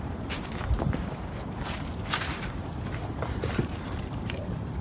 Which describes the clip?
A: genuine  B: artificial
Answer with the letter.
B